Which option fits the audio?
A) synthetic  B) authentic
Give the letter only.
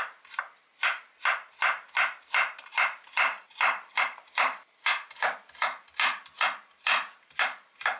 B